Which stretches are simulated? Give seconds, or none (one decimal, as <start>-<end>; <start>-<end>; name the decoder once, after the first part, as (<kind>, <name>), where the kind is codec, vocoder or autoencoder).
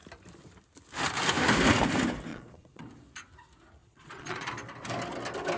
2.3-2.8 (vocoder, Vocos); 3.8-4.5